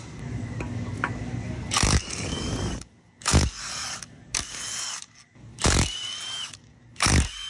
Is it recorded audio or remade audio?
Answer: remade